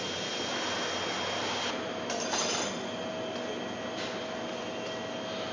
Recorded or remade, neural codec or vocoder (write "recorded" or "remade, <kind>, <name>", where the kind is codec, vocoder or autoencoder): recorded